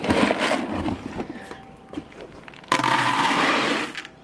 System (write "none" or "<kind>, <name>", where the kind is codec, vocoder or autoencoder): none